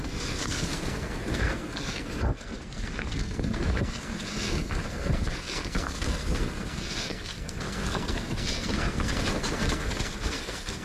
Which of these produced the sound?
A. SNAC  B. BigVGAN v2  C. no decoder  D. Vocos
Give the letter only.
A